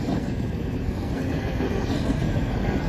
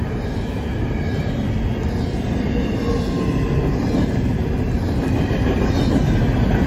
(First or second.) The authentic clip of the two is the second